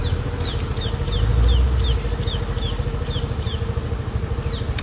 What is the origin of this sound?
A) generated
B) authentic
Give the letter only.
B